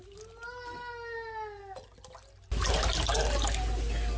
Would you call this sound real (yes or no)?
yes